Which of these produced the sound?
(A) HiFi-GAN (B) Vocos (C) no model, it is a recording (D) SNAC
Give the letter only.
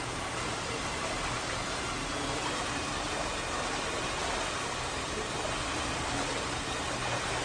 C